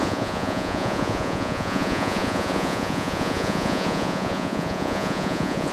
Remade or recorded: remade